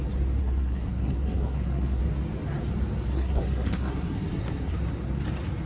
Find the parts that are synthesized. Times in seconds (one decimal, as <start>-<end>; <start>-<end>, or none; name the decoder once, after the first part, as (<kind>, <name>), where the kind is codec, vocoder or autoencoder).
0.4-2.0 (codec, SNAC); 3.1-4.8